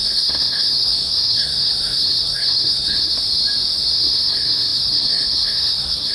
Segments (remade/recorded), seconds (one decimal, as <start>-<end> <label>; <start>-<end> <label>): 0.0-3.1 remade; 3.1-3.9 recorded; 3.9-6.1 remade